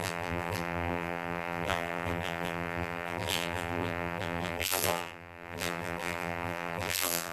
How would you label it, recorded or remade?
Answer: remade